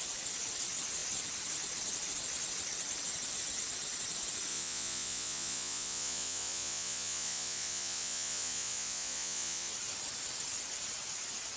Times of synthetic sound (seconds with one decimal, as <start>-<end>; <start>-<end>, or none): 4.5-9.7